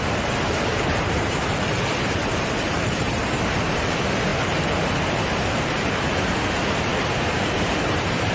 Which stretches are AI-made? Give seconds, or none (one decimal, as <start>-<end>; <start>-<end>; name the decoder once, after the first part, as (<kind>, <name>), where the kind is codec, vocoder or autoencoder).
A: 0.0-8.3 (vocoder, BigVGAN v2)